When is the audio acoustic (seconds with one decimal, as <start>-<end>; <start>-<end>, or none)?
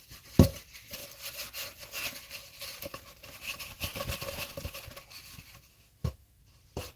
0.0-5.7; 6.4-7.0